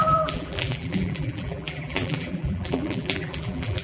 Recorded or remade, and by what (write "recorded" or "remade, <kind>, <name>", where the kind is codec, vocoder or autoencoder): remade, vocoder, BigVGAN v2